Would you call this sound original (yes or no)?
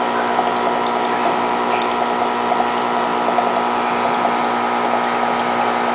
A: yes